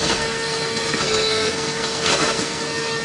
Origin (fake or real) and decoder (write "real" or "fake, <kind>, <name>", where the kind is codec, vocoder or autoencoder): fake, codec, SNAC